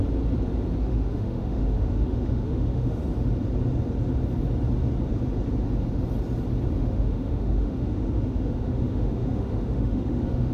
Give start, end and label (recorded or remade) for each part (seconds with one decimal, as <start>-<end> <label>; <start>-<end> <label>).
0.0-0.8 recorded; 0.8-3.0 remade; 3.0-6.8 recorded; 6.8-10.5 remade